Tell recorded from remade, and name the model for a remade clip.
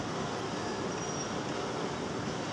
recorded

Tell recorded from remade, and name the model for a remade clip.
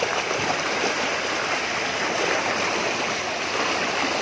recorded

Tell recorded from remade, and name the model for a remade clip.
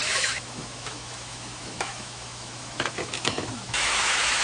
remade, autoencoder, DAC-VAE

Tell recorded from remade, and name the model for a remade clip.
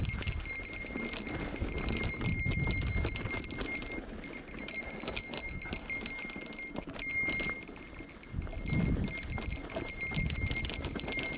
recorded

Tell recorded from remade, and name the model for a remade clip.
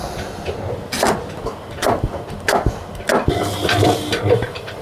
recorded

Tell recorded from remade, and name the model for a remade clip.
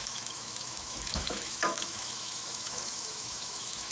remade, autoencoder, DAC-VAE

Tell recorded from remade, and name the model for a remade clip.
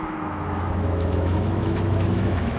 remade, autoencoder, DAC-VAE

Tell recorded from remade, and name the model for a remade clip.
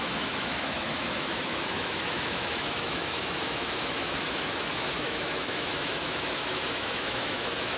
remade, autoencoder, DAC-VAE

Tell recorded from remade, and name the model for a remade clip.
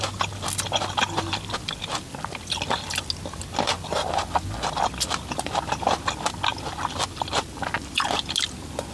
recorded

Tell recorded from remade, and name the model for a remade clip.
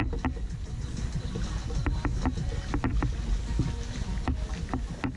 recorded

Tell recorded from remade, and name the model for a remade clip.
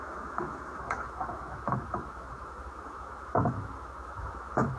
remade, autoencoder, DAC-VAE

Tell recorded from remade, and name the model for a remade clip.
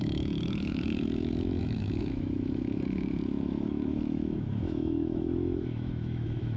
remade, autoencoder, DAC-VAE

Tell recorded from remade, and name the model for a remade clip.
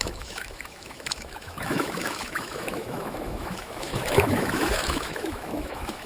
remade, autoencoder, DAC-VAE